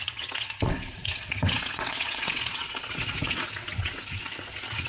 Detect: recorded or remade remade